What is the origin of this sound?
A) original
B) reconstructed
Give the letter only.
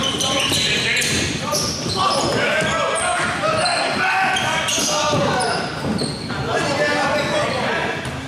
A